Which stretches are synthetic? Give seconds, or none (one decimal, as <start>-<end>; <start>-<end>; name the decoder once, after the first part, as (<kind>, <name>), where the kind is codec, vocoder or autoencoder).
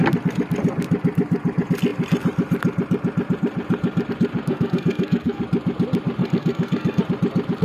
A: 4.5-5.4 (codec, SNAC); 6.2-7.0